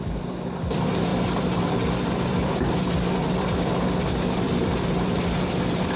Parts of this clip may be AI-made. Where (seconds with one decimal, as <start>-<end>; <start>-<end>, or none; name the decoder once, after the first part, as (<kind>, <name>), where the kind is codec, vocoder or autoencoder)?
0.0-6.0 (vocoder, BigVGAN v2)